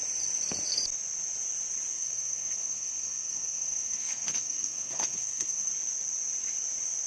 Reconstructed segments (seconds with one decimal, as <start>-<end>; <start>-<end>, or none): 1.9-5.7